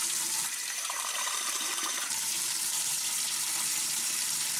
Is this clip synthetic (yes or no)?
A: yes